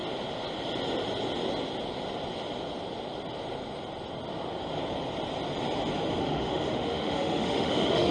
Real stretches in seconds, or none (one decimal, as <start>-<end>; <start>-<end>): 0.0-6.2